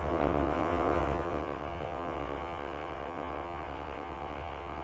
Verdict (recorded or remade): remade